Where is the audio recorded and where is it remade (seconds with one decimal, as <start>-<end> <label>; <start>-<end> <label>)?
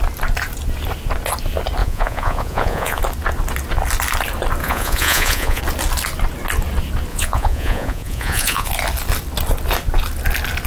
0.0-1.8 recorded; 1.8-3.0 remade; 3.0-4.6 recorded; 4.6-5.6 remade; 5.6-7.1 recorded; 7.1-8.7 remade; 8.7-10.7 recorded